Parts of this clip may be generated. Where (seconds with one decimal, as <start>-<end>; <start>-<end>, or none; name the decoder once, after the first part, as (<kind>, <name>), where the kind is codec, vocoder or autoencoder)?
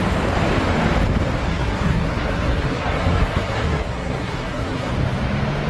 1.5-4.9 (codec, SNAC)